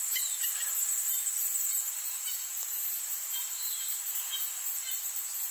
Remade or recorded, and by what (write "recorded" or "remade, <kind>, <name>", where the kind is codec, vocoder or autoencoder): remade, vocoder, BigVGAN v2